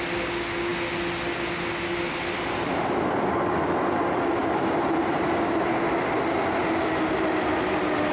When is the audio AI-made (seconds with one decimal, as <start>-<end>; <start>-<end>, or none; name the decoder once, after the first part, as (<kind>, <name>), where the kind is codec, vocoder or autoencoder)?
none